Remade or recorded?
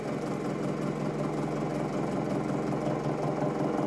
recorded